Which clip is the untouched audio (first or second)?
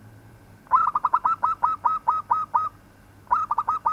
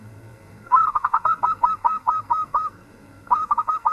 first